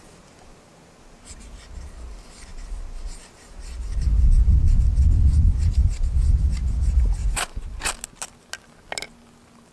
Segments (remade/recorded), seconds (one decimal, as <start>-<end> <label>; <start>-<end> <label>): 0.0-7.2 recorded; 7.2-7.9 remade; 7.9-9.7 recorded